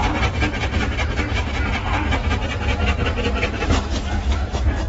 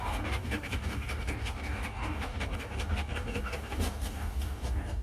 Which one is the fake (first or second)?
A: second